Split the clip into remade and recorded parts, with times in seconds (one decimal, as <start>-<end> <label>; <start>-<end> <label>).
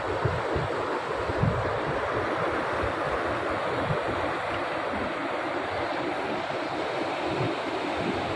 0.0-8.4 remade